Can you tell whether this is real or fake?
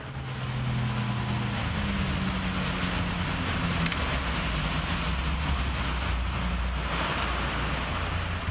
real